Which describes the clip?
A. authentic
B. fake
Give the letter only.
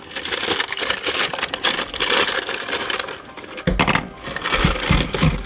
A